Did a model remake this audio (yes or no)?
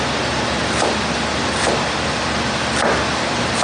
no